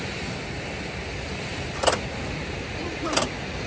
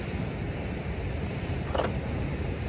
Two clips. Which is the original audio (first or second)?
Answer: first